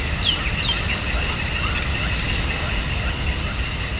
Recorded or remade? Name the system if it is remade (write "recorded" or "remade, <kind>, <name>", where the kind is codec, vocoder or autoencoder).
recorded